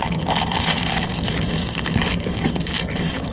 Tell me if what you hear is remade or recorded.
remade